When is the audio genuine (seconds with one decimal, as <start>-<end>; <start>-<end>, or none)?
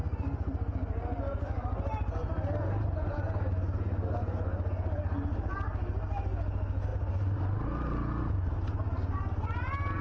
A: 0.0-10.0